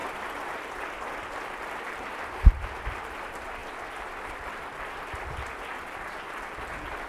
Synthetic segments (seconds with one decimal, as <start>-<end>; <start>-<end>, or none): none